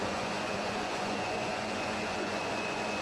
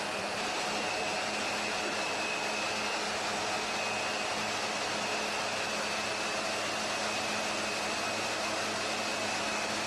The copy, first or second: first